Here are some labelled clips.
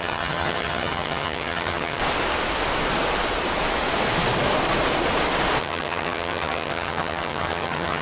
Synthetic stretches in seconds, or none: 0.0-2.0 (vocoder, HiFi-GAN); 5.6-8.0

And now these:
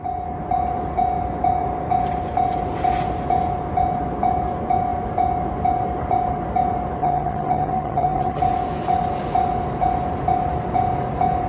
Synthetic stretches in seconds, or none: 7.0-8.4 (vocoder, HiFi-GAN)

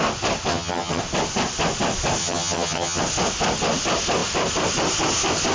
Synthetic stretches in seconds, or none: 0.5-1.0 (vocoder, HiFi-GAN); 2.2-3.0

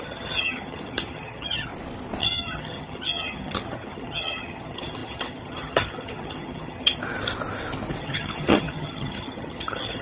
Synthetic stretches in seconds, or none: 0.0-1.7 (vocoder, HiFi-GAN); 2.2-7.0; 8.0-10.0

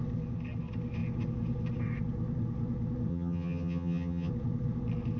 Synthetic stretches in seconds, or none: 3.1-4.3 (vocoder, HiFi-GAN)

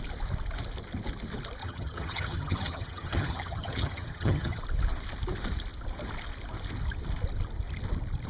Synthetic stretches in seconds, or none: 1.6-4.6 (vocoder, HiFi-GAN)

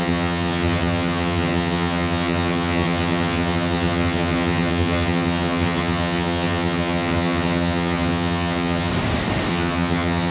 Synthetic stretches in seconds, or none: 0.0-8.9 (vocoder, HiFi-GAN); 9.5-10.3

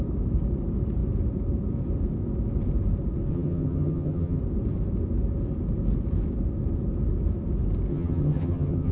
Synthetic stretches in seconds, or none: 3.3-4.4 (vocoder, HiFi-GAN); 7.9-8.9